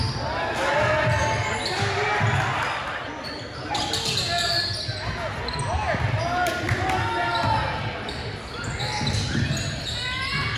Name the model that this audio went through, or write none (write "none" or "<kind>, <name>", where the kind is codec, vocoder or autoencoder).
none